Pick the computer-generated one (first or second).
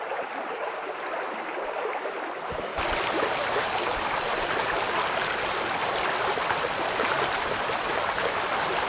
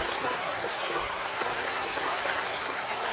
second